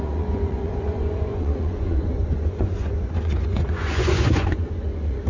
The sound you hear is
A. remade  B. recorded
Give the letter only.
A